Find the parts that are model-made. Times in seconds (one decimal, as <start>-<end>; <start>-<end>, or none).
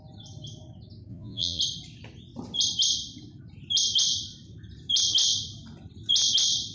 1.1-1.6